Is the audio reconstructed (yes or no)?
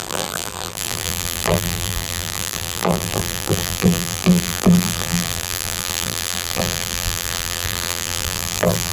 yes